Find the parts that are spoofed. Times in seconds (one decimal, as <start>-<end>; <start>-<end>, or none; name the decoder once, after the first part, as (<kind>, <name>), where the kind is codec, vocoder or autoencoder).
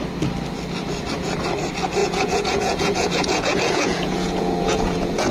2.0-5.3 (vocoder, Vocos)